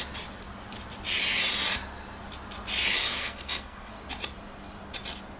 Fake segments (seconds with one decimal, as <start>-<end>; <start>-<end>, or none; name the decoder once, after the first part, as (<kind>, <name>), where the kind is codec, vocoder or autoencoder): 3.0-3.9 (codec, SNAC)